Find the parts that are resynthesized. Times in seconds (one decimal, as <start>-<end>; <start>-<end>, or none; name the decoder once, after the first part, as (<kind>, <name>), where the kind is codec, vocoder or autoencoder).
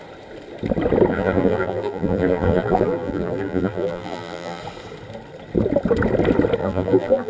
1.1-4.6 (vocoder, BigVGAN v2); 6.6-7.3